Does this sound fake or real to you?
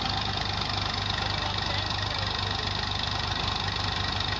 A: real